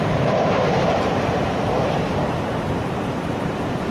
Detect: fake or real fake